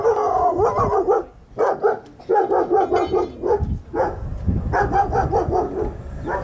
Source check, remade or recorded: recorded